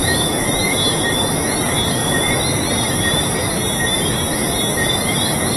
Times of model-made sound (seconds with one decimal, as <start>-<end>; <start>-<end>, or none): 0.0-1.0; 2.0-2.6